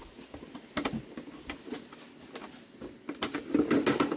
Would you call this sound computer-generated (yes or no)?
no